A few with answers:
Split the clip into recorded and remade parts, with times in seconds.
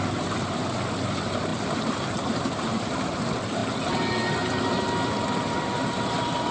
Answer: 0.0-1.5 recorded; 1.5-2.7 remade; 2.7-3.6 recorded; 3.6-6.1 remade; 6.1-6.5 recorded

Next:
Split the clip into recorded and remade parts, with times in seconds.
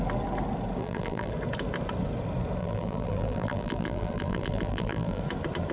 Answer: 0.0-0.8 recorded; 0.8-1.3 remade; 1.3-2.6 recorded; 2.6-5.2 remade; 5.2-5.7 recorded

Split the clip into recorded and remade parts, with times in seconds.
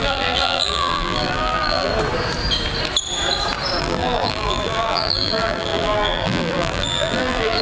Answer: 0.0-1.9 remade; 1.9-3.8 recorded; 3.8-7.6 remade